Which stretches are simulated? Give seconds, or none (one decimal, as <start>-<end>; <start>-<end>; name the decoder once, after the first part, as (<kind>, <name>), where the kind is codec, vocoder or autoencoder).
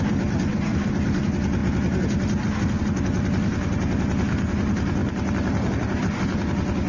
none